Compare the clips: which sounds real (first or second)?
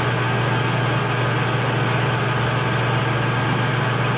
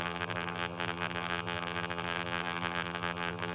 first